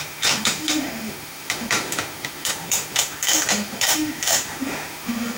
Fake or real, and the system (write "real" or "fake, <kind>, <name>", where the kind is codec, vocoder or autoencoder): fake, autoencoder, DAC-VAE